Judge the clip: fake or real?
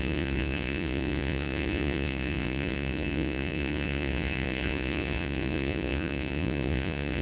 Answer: fake